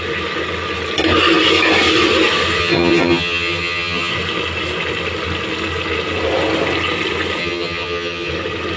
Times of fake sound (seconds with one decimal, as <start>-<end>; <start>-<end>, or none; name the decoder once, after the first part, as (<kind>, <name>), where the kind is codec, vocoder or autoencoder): 2.6-4.1 (vocoder, HiFi-GAN); 7.4-8.3